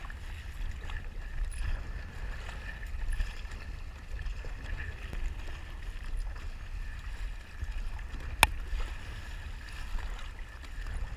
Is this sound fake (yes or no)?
no